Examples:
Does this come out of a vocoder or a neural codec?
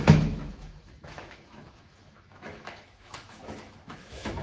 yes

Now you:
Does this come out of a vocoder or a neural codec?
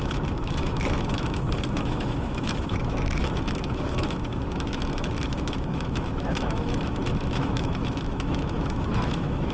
yes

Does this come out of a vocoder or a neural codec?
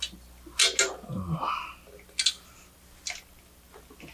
no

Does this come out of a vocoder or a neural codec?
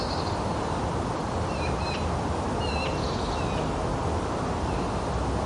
no